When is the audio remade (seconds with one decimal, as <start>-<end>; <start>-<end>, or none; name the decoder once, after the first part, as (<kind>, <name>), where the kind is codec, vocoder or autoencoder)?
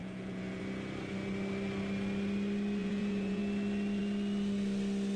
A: 0.0-0.6 (vocoder, Vocos); 2.8-3.4